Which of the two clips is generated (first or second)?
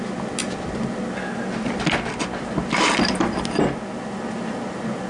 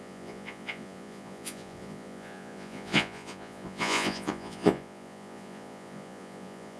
second